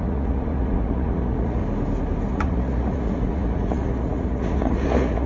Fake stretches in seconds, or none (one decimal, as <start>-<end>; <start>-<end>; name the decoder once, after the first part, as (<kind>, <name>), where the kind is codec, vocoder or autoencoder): 0.0-1.6 (vocoder, Vocos); 2.3-5.3